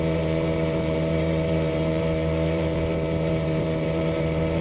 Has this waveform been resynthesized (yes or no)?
yes